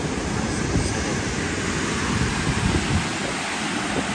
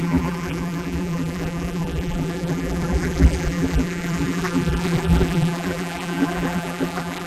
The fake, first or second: second